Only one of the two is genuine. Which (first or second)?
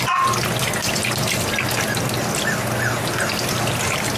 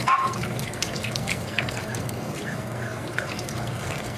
first